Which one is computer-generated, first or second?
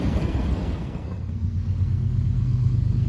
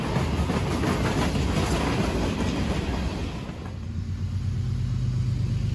first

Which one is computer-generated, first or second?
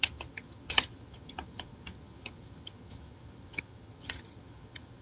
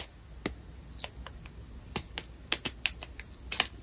first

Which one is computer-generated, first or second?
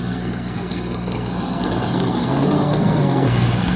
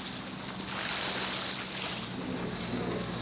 first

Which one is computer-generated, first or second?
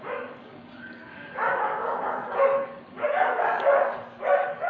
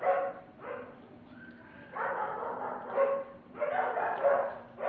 first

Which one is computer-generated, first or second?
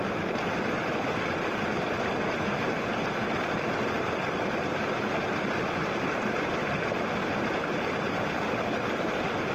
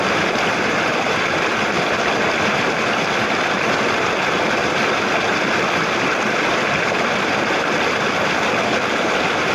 second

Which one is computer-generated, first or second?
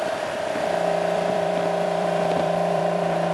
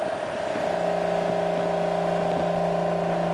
first